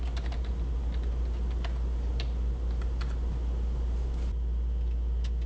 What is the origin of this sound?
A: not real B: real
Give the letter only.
B